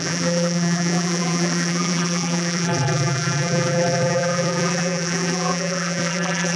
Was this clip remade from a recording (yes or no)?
yes